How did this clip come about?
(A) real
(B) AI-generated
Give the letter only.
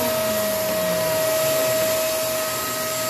A